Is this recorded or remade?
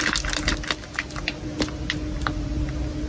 recorded